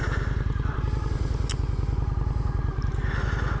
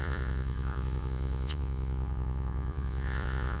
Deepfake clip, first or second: second